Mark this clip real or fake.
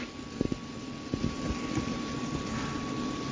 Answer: real